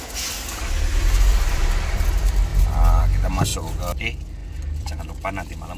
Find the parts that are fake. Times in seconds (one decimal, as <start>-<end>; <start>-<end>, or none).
1.3-2.0; 2.5-3.0; 3.5-4.0; 4.4-5.0